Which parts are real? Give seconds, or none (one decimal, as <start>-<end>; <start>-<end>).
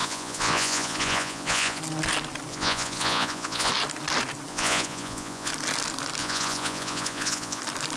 1.8-2.5; 3.7-4.5; 5.5-6.2; 7.6-8.0